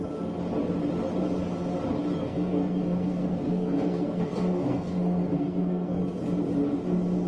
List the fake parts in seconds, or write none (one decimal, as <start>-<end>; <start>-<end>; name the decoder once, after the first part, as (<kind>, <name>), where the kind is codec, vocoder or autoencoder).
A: 2.2-6.0 (codec, SNAC)